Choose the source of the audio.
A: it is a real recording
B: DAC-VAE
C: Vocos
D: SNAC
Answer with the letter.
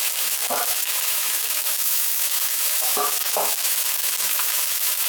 B